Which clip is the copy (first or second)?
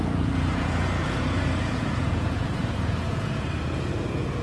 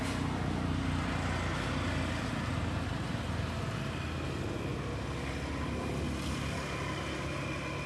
first